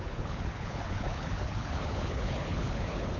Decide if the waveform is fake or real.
fake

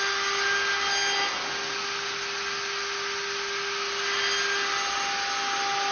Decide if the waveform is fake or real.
real